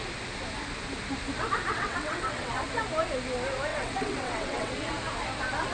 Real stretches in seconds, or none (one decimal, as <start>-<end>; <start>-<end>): 0.0-1.7; 2.5-3.7; 4.7-5.7